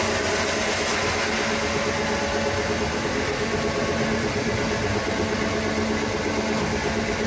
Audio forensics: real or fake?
real